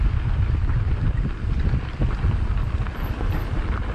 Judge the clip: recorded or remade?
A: recorded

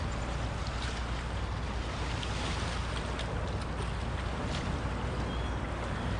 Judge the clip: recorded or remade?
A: recorded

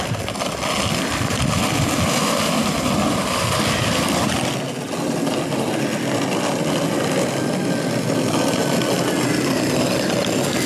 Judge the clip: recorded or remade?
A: recorded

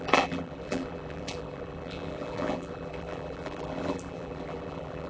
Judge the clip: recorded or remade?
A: remade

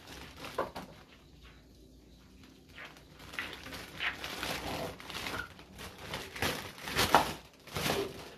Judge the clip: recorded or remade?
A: recorded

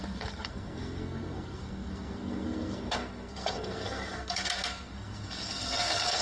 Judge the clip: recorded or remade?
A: remade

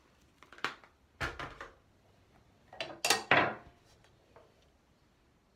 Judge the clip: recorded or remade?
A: recorded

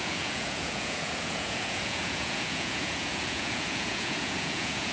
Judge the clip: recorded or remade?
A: remade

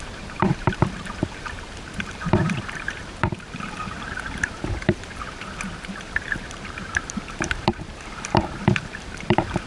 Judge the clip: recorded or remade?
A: remade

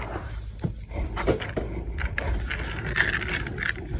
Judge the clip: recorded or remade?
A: recorded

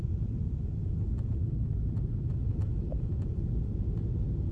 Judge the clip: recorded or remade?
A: remade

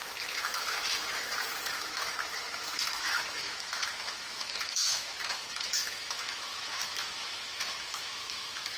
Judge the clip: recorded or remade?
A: remade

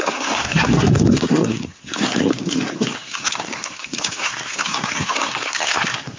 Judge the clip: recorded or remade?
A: remade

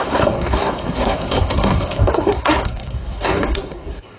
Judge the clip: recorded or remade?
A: remade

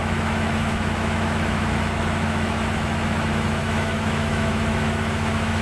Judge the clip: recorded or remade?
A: remade